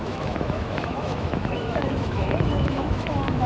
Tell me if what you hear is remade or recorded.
remade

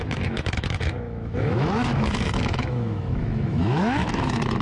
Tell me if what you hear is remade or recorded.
remade